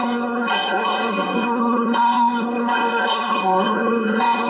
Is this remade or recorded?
remade